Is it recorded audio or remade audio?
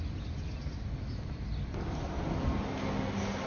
recorded